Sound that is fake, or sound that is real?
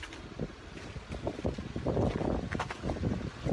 real